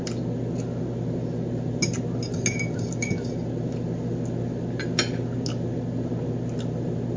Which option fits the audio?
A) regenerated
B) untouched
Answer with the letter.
B